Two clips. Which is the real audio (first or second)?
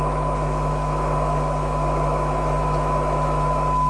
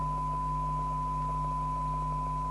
second